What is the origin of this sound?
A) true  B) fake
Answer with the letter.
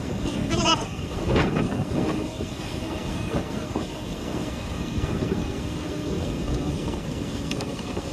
B